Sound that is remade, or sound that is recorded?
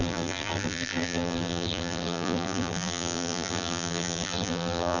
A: remade